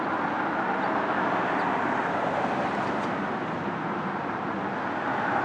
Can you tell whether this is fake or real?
real